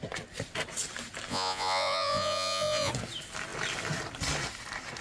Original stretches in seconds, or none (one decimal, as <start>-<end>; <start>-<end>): 0.0-1.3; 2.9-5.0